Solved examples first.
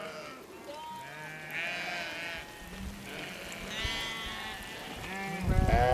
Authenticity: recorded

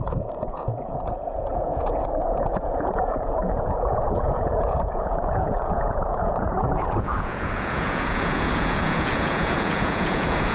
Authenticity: remade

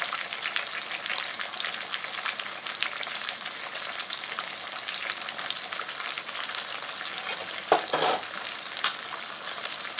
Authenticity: recorded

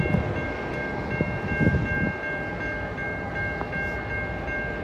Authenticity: recorded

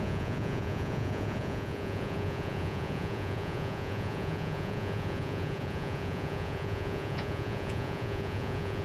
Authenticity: remade